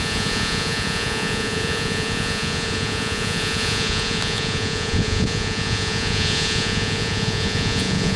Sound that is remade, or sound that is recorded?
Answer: remade